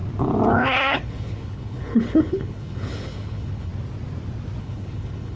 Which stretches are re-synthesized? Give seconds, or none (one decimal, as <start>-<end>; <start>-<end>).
0.5-3.7; 4.6-5.4